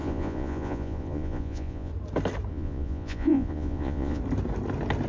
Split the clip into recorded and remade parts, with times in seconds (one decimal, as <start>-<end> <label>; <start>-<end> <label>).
0.0-1.9 remade; 1.9-2.5 recorded; 2.5-4.2 remade; 4.2-5.1 recorded